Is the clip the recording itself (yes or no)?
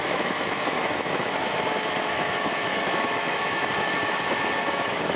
no